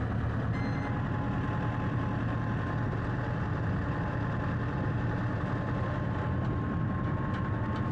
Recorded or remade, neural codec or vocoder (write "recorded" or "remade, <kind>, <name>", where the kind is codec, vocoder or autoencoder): recorded